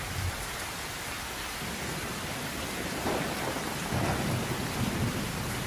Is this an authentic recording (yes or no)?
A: yes